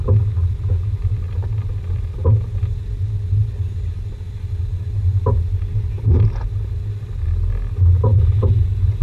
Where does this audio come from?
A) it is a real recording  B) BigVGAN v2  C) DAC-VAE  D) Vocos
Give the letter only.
A